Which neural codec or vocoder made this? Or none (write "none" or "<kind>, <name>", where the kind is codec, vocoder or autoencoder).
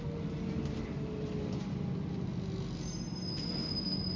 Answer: none